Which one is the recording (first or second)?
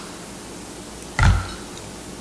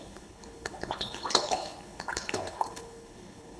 first